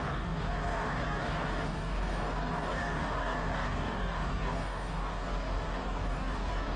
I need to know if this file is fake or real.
fake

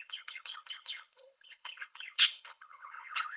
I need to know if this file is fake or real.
fake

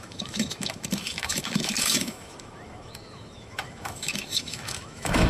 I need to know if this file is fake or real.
fake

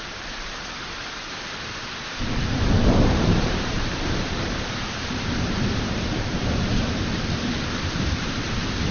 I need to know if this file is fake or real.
fake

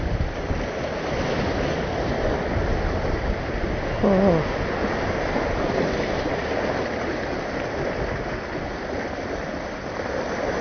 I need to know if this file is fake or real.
real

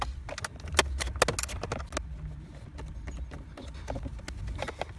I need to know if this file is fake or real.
real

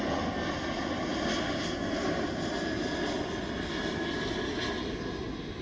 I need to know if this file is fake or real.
real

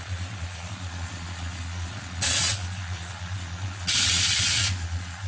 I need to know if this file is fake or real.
fake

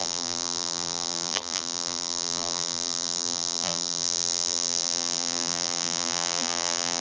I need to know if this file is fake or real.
fake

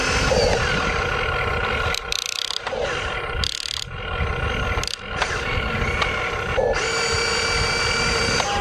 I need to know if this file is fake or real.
real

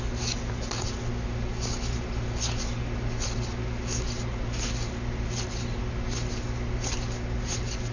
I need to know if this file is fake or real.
real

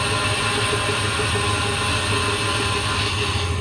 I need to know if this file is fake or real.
real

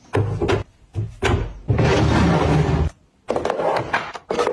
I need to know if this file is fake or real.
real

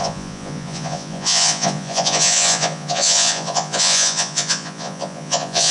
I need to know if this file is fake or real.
fake